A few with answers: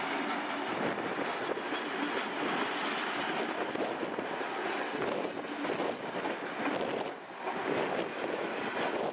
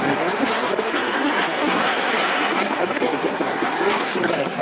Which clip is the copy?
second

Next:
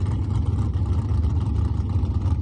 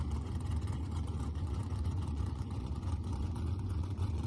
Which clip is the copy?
second